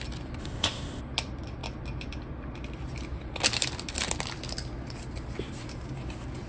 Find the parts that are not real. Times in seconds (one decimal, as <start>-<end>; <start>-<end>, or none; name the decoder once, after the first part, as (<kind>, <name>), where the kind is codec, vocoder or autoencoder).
0.4-1.0 (codec, ZipCodec)